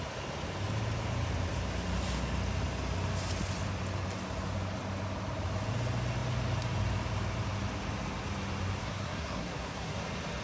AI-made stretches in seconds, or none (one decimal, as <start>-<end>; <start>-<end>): 8.8-10.0